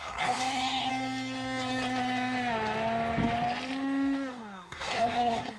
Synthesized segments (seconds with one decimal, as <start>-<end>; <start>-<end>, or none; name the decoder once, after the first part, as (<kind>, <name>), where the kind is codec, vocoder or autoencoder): 0.0-0.9 (codec, SNAC); 4.3-5.6